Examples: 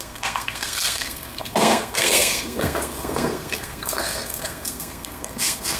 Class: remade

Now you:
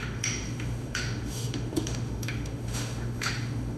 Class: remade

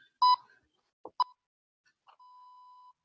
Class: recorded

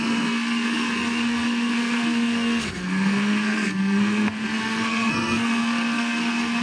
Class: remade